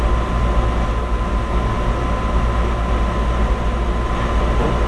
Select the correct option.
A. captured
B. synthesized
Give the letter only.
A